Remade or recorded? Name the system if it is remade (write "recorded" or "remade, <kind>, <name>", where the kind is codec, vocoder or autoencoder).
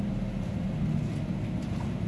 recorded